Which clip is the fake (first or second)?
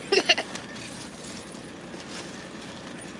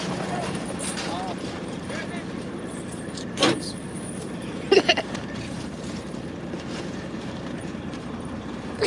second